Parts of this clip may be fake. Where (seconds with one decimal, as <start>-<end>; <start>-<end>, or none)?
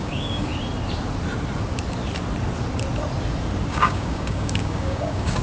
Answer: 0.0-0.5; 3.7-5.4